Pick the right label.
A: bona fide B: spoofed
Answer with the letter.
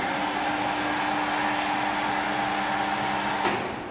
A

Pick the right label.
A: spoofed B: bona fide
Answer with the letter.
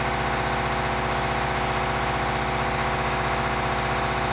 B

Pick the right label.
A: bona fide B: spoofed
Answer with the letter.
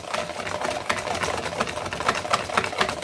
A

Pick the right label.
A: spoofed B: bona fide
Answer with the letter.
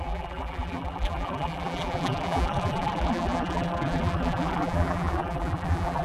A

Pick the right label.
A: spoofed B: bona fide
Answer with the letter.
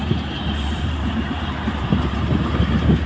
A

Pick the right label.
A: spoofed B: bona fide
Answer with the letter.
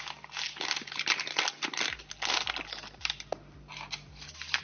B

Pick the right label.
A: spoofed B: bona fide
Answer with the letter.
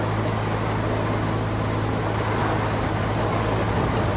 B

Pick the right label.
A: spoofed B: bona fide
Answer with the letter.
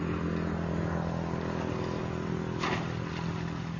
B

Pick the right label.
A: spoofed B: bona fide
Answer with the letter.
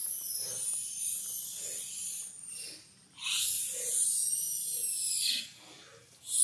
B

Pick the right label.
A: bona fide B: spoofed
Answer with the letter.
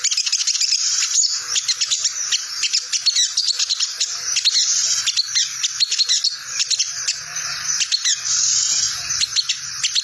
A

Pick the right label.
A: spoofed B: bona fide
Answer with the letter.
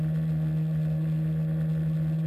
B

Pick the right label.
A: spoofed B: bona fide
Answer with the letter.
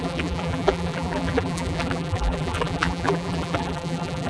A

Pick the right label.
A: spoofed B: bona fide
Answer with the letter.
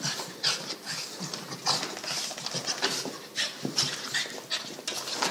B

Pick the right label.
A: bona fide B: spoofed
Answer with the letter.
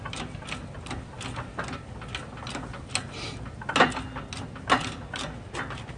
A